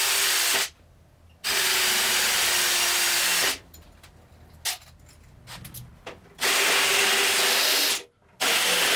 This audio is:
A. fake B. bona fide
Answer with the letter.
B